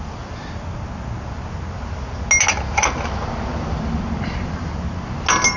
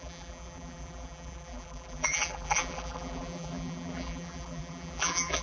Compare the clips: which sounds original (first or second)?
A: first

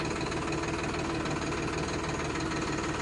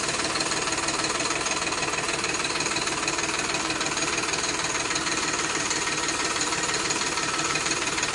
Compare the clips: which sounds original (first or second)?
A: first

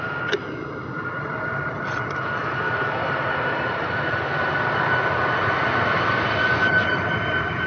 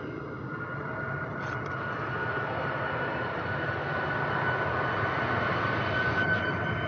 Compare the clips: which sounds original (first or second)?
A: second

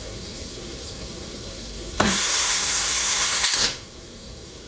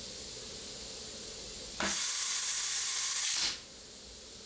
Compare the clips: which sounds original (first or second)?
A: second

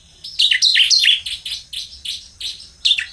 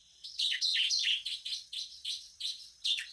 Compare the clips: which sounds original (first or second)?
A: first